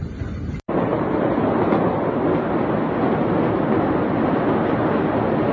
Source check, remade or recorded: recorded